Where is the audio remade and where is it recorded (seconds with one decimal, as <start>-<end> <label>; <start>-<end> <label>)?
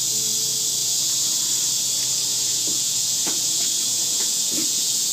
0.0-0.8 recorded; 0.8-1.4 remade; 1.4-2.3 recorded; 2.3-5.1 remade